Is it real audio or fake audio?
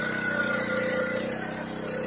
real